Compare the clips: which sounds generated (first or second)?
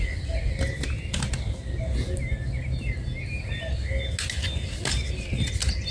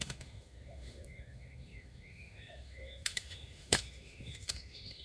second